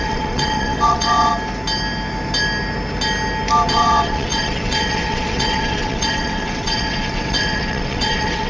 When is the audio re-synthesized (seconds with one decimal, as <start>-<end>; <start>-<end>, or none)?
0.0-1.3; 3.7-8.5